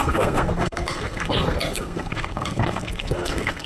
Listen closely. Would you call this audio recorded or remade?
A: remade